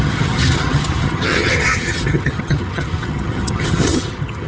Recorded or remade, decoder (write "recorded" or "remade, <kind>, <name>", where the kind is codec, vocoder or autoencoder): remade, vocoder, HiFi-GAN